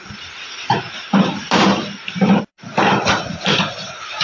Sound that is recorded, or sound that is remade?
remade